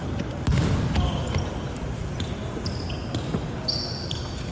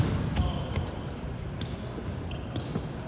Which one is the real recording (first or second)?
first